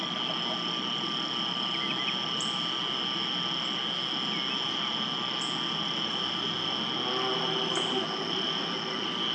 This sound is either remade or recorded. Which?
recorded